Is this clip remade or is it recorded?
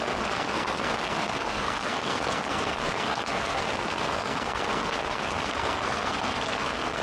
remade